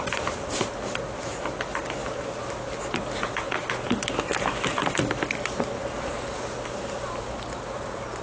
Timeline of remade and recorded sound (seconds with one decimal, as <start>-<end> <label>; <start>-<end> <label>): 0.0-5.8 recorded; 5.8-6.4 remade; 6.4-8.2 recorded